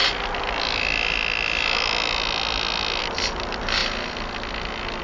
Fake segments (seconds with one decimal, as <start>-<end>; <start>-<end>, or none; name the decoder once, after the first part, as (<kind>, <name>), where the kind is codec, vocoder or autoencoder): none